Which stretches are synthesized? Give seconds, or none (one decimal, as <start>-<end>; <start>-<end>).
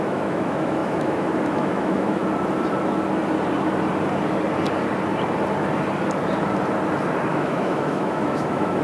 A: 0.0-2.2; 7.3-8.8